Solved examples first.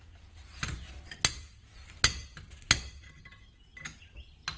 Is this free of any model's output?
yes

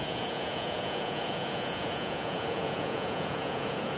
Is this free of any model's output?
no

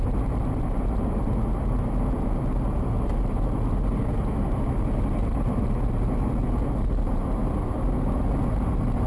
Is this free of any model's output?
yes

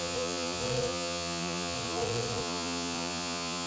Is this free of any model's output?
no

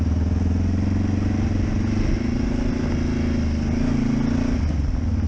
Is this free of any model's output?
yes